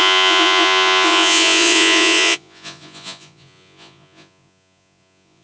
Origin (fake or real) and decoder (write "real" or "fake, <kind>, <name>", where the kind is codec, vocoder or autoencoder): fake, vocoder, Vocos